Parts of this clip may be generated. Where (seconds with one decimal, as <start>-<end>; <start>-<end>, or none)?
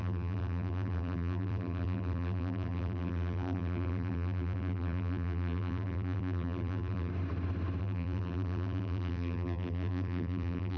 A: 0.0-7.1; 7.8-10.8